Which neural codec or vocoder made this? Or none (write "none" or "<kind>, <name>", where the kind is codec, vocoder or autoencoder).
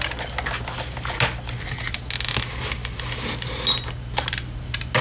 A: none